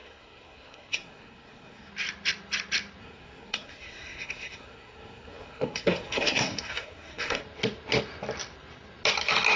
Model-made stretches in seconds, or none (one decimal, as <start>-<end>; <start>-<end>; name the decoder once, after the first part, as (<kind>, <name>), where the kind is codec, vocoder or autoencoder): 0.0-1.9 (codec, SNAC); 3.0-7.4